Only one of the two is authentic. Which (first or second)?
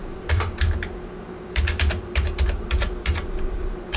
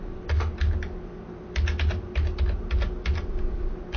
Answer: second